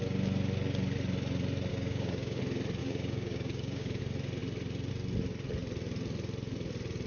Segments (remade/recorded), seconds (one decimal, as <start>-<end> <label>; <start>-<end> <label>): 0.0-1.7 recorded; 1.7-2.4 remade; 2.4-2.8 recorded; 2.8-4.0 remade; 4.0-7.1 recorded